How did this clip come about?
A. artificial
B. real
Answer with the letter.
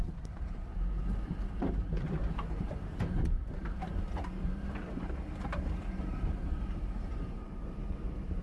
A